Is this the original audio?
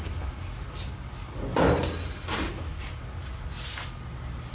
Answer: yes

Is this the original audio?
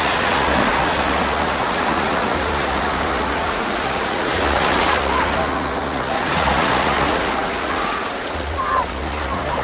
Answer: no